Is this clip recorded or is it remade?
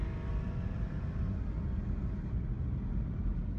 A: recorded